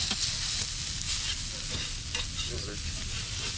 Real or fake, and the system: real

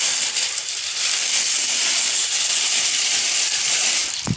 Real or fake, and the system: fake, vocoder, BigVGAN v2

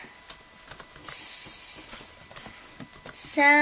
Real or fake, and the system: real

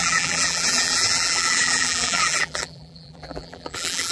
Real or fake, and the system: fake, vocoder, BigVGAN v2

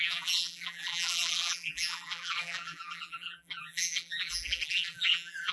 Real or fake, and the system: fake, vocoder, BigVGAN v2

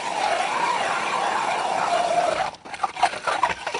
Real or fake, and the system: fake, vocoder, BigVGAN v2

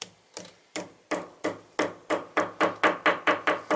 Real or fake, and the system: real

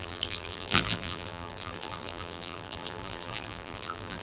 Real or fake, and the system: fake, vocoder, BigVGAN v2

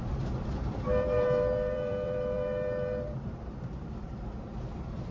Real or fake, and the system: fake, vocoder, BigVGAN v2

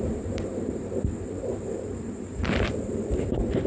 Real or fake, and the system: fake, vocoder, BigVGAN v2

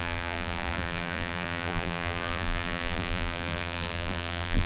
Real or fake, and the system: fake, vocoder, BigVGAN v2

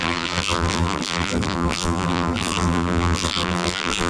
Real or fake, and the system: fake, vocoder, BigVGAN v2